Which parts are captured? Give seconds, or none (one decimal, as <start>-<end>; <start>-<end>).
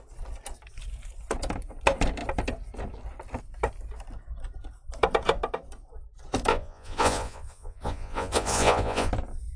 0.0-6.5; 9.1-9.6